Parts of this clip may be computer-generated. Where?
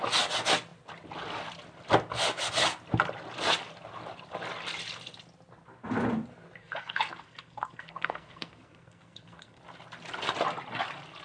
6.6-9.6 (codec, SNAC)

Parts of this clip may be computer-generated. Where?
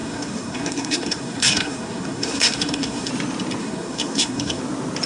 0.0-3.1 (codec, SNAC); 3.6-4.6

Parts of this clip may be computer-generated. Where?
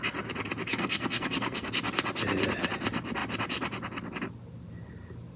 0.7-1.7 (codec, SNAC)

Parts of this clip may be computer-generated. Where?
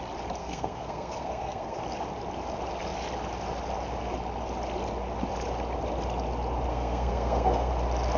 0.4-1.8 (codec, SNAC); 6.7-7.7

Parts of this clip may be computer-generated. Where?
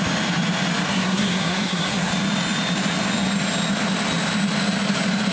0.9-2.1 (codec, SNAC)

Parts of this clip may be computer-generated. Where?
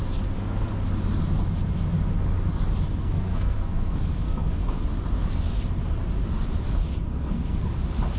3.0-4.8 (codec, SNAC); 7.1-7.7